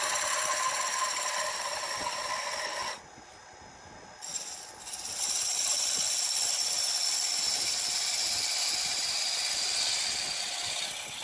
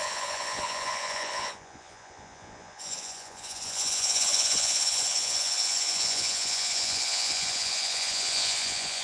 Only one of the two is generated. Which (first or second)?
second